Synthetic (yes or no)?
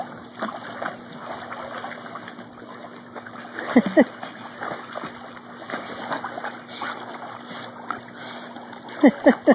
no